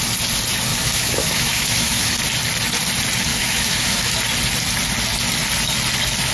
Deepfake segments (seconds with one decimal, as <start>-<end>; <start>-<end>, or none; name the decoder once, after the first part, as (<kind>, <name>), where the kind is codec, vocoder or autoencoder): 0.7-2.1 (autoencoder, DAC-VAE); 3.3-4.2

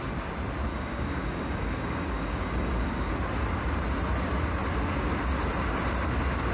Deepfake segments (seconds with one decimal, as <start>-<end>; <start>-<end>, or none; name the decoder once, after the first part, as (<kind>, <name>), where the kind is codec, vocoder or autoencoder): 0.7-3.1 (codec, DAC)

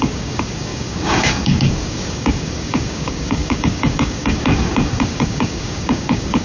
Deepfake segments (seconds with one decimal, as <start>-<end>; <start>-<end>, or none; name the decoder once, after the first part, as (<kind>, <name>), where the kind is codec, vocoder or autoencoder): 0.0-6.4 (codec, DAC)

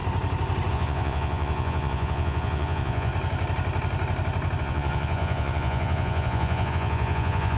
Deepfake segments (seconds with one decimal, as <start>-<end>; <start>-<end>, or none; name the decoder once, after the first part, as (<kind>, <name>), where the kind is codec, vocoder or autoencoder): 0.7-3.1 (vocoder, Vocos); 4.6-7.6

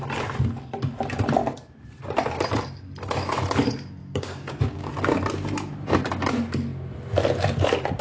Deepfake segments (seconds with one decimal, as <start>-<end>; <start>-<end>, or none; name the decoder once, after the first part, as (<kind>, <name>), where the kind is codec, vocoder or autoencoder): 4.0-4.9 (codec, DAC)

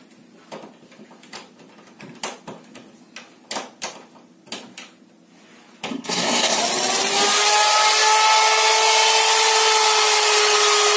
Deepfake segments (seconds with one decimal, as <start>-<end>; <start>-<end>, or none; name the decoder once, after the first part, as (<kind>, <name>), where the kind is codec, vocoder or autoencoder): 5.9-6.6 (codec, SNAC)

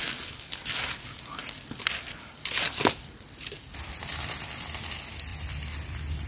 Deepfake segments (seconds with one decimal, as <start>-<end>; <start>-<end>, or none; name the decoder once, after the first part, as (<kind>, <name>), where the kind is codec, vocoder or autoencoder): 1.4-4.8 (vocoder, BigVGAN v2); 5.3-6.3